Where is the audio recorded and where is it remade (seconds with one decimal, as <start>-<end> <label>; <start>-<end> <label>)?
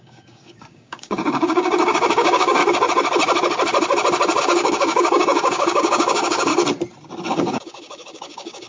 0.0-2.6 remade; 2.6-4.4 recorded; 4.4-6.5 remade; 6.5-7.3 recorded; 7.3-8.7 remade